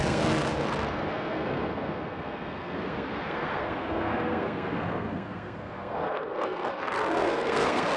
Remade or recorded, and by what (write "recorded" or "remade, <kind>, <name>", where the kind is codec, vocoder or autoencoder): remade, codec, SNAC